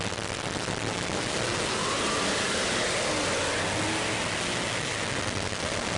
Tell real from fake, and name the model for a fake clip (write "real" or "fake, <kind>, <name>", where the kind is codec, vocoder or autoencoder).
real